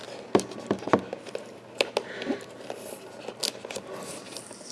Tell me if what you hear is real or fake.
real